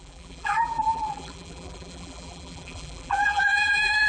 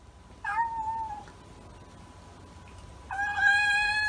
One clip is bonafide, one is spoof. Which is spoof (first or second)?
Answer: first